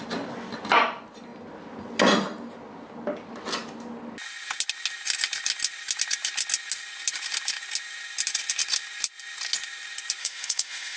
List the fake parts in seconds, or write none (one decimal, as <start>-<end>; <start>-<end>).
10.2-11.0